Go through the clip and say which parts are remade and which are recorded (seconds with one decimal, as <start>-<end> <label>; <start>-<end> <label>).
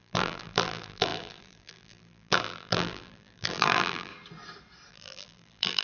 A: 0.0-4.1 remade; 4.1-4.9 recorded; 4.9-5.8 remade